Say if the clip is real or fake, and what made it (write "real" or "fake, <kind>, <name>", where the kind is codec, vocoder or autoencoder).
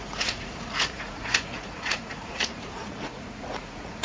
fake, vocoder, Vocos